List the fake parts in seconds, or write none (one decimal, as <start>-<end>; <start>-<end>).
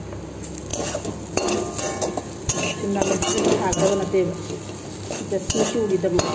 none